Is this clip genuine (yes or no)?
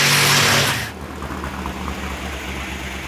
yes